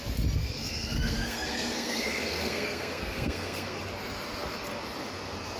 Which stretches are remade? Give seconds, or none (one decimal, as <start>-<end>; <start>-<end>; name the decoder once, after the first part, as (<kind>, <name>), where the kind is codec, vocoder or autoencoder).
0.4-3.8 (codec, SNAC)